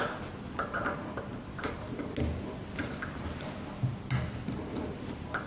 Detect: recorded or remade recorded